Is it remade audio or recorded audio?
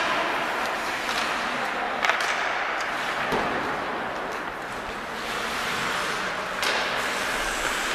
recorded